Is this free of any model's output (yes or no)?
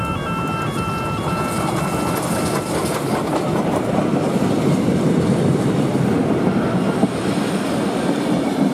yes